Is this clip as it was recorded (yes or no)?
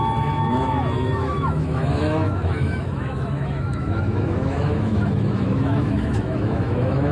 no